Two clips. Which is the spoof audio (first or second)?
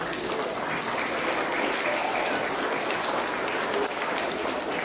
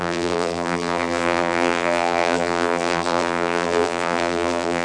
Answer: second